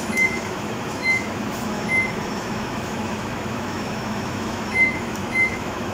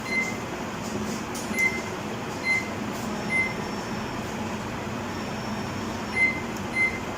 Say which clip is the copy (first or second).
first